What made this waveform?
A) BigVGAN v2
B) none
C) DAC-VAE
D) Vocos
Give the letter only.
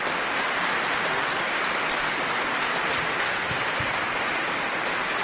B